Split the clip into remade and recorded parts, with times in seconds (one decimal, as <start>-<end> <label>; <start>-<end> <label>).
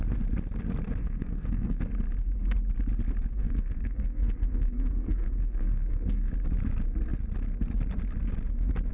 0.0-1.0 recorded; 1.0-1.8 remade; 1.8-3.3 recorded; 3.3-6.3 remade; 6.3-8.9 recorded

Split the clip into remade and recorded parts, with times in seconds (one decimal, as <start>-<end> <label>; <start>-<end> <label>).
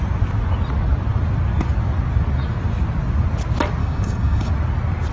0.0-3.8 recorded; 3.8-4.5 remade; 4.5-5.1 recorded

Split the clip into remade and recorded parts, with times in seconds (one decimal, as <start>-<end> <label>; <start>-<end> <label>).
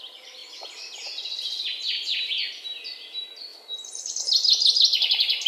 0.0-5.5 recorded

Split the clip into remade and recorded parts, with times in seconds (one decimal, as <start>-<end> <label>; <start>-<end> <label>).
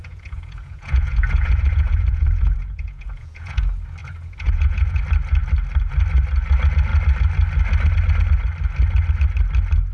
0.0-3.6 remade; 3.6-4.0 recorded; 4.0-5.0 remade; 5.0-9.9 recorded